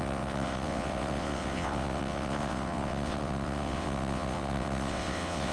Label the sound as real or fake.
fake